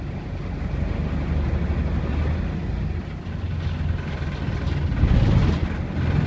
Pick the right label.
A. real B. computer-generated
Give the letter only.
A